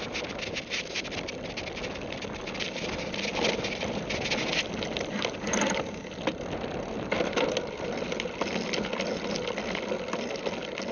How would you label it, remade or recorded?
recorded